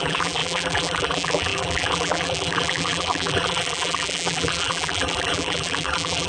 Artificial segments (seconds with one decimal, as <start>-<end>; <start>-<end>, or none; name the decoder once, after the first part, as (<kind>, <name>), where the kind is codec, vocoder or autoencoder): 0.0-6.3 (vocoder, BigVGAN v2)